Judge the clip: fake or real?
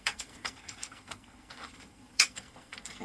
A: fake